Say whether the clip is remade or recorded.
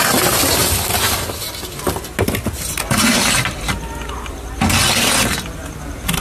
recorded